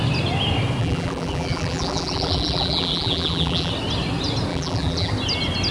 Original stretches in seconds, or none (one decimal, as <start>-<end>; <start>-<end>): 0.0-0.8; 3.7-4.5; 5.1-5.7